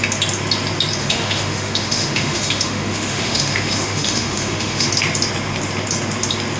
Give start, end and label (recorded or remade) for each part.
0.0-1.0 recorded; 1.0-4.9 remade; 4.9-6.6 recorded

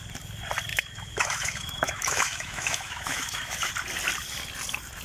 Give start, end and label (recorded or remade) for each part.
0.0-0.7 recorded; 0.7-3.7 remade; 3.7-5.0 recorded

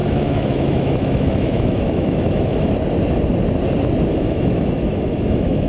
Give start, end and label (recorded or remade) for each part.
0.0-2.7 remade; 2.7-4.1 recorded; 4.1-5.7 remade

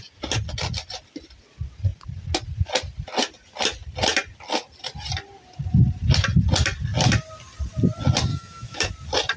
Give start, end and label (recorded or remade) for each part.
0.0-8.3 recorded; 8.3-8.9 remade; 8.9-9.4 recorded